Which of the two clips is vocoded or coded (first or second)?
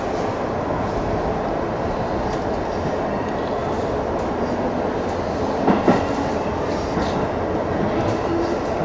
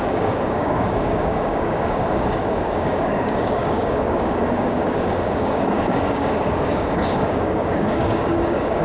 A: second